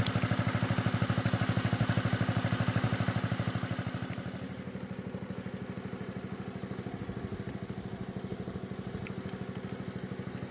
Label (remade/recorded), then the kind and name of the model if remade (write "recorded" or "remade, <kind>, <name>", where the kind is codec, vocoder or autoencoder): recorded